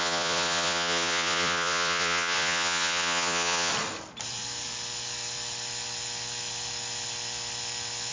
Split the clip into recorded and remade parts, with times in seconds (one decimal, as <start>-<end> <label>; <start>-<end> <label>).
0.0-3.7 remade; 3.7-8.1 recorded